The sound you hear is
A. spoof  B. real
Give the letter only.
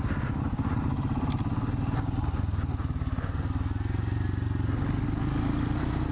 B